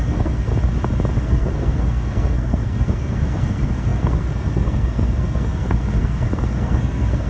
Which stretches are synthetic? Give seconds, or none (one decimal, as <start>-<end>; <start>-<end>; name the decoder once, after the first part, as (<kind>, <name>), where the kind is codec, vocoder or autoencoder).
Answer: 0.0-0.5 (codec, SNAC); 1.2-7.3